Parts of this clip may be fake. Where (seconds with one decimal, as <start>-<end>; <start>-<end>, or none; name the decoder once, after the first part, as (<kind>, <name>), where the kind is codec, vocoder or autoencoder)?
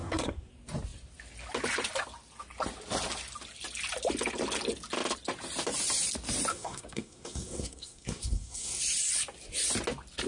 0.0-0.5 (codec, SNAC); 6.5-8.8